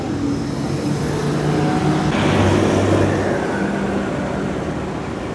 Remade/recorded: recorded